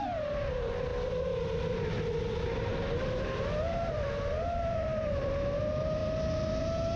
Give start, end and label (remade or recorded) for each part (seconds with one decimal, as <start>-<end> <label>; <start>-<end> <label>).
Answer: 0.0-0.9 remade; 0.9-1.6 recorded; 1.6-6.0 remade; 6.0-6.6 recorded; 6.6-7.0 remade